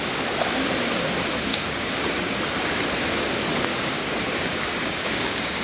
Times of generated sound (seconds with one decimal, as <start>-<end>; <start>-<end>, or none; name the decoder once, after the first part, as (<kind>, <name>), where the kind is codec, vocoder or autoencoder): 1.5-2.4 (codec, DAC); 3.7-5.6